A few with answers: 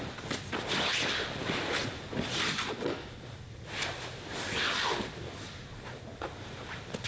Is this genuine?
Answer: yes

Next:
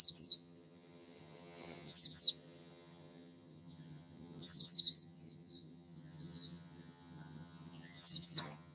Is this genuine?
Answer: no